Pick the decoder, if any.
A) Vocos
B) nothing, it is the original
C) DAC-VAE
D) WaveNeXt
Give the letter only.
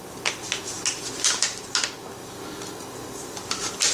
B